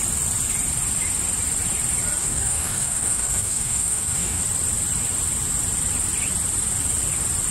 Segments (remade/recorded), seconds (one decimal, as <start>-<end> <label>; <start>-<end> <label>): 0.0-2.2 recorded; 2.2-4.4 remade; 4.4-7.5 recorded